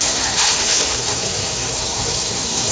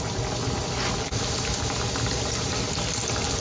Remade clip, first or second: first